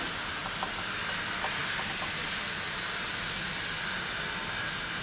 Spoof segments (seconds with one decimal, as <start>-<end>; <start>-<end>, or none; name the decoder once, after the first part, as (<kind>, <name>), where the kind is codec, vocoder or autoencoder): 0.0-0.4 (vocoder, BigVGAN v2); 1.2-1.6; 4.6-5.0